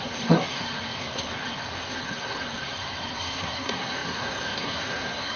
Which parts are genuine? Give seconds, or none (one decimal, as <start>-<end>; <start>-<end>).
none